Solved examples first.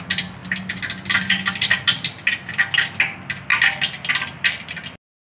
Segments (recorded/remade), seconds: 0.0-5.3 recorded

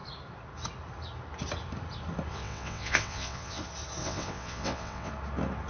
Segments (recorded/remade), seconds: 0.0-2.3 recorded; 2.3-3.6 remade; 3.6-4.0 recorded; 4.0-5.1 remade; 5.1-5.7 recorded

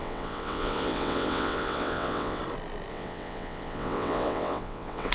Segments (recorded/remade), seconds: 0.0-2.4 remade; 2.4-2.9 recorded; 2.9-5.1 remade

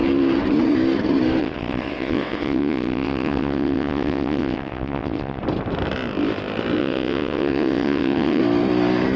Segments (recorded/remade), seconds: 0.0-1.4 recorded; 1.4-5.4 remade; 5.4-6.8 recorded; 6.8-8.4 remade; 8.4-9.2 recorded

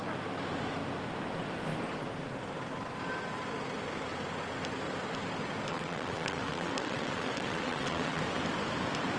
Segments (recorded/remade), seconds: 0.0-5.7 recorded; 5.7-8.2 remade; 8.2-9.2 recorded